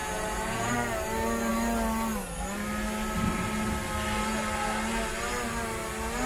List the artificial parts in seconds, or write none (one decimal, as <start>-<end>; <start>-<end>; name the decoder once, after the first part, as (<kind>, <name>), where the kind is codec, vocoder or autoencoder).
0.0-0.7 (vocoder, Vocos)